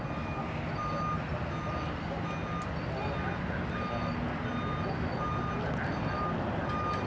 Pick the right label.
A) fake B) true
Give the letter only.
B